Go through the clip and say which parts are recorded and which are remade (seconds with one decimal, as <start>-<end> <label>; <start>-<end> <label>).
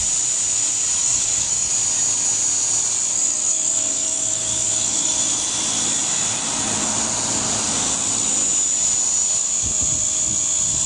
0.0-1.0 recorded; 1.0-1.7 remade; 1.7-3.1 recorded; 3.1-5.2 remade; 5.2-10.9 recorded